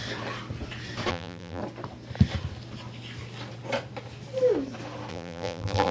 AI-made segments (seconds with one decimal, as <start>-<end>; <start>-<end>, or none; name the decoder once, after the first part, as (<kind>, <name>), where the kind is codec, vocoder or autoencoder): 1.1-1.6 (vocoder, BigVGAN v2); 5.1-5.9

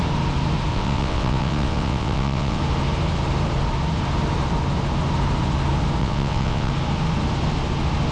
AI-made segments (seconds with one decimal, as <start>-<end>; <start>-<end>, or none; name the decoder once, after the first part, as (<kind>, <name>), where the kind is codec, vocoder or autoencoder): 0.7-2.6 (vocoder, WaveNeXt); 6.0-6.7

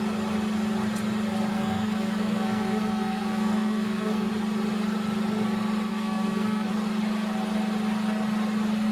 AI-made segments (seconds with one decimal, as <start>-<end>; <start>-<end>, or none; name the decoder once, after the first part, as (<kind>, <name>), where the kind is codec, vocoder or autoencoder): 1.5-4.3 (codec, SNAC); 5.9-6.7

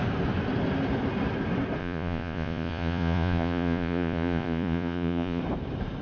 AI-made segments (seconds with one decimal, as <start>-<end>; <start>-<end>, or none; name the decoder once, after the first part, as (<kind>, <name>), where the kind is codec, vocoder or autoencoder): 1.8-5.4 (vocoder, Vocos)

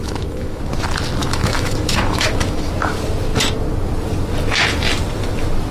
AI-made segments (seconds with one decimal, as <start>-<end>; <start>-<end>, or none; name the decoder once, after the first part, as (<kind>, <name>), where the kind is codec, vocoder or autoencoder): 0.0-0.6 (autoencoder, DAC-VAE); 1.2-2.7

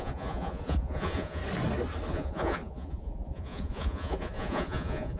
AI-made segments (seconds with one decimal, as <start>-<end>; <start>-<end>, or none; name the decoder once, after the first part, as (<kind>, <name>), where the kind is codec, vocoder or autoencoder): 0.0-1.4 (vocoder, Vocos); 2.1-5.2